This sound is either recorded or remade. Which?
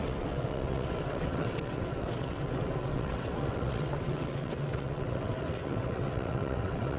remade